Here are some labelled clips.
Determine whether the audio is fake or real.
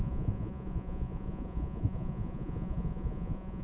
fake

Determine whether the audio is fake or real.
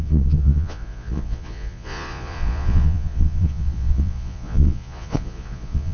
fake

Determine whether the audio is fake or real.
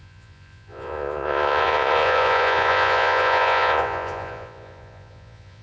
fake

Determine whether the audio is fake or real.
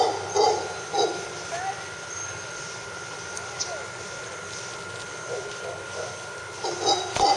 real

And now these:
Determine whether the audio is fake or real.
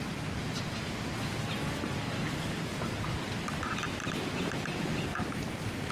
real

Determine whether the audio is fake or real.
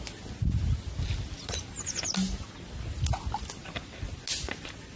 real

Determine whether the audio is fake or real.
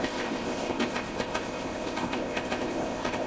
fake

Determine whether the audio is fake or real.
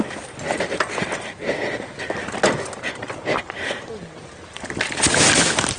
real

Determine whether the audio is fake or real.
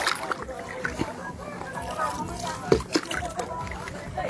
real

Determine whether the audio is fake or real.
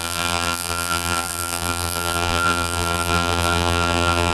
fake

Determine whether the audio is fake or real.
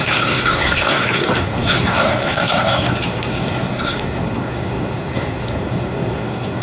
fake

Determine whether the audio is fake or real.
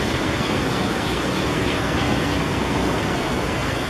fake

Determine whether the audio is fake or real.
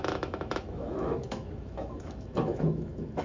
fake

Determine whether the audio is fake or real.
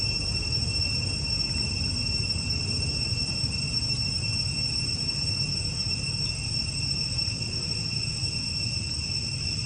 real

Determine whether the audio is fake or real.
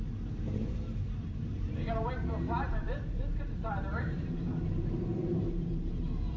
fake